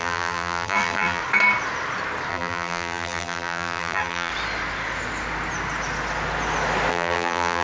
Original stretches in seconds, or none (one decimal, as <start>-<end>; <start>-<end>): 1.2-2.3; 4.3-6.9